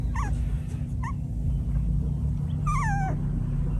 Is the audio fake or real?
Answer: real